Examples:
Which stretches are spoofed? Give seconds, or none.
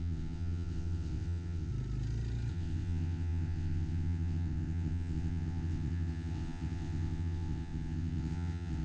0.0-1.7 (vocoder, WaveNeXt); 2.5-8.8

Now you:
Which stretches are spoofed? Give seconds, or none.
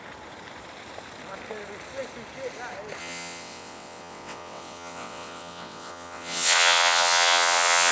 3.0-7.9 (vocoder, WaveNeXt)